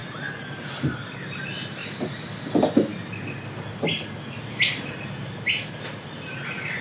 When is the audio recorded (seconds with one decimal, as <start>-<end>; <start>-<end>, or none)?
0.0-6.8